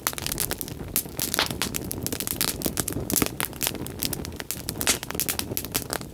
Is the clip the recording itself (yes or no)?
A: yes